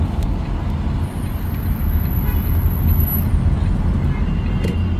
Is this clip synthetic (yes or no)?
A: no